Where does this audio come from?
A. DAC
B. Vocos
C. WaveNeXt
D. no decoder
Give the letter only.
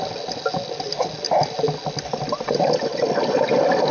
D